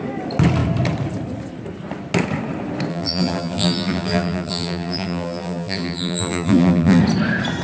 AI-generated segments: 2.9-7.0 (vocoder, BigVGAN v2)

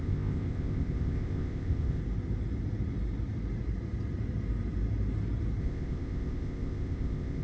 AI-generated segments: 0.0-2.0 (codec, ZipCodec); 5.6-7.4

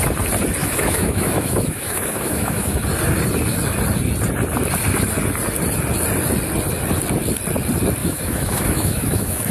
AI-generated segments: 0.6-2.8 (autoencoder, DAC-VAE); 8.0-9.5

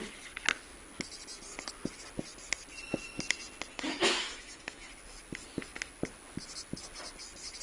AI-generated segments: 3.7-4.9 (autoencoder, DAC-VAE)

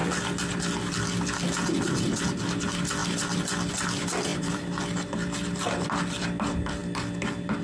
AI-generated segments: 4.3-4.8 (vocoder, BigVGAN v2)

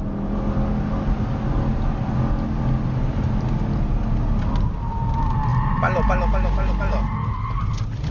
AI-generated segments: none

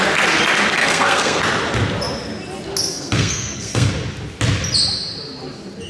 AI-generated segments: 0.8-1.4 (codec, SNAC); 2.9-3.9

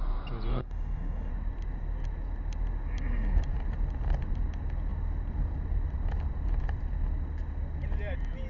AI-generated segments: 0.5-1.3 (autoencoder, DAC-VAE)